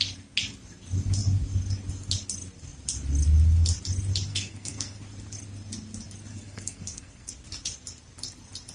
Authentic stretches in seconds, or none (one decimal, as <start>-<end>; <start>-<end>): 0.0-4.3; 5.0-6.3; 7.3-8.7